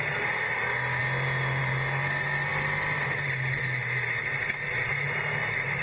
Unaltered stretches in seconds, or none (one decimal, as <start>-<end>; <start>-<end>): 0.0-5.8